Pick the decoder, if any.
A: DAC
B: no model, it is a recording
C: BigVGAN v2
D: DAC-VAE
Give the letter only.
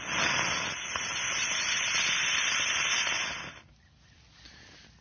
B